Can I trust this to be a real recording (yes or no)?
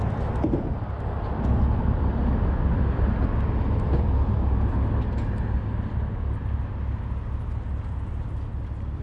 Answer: yes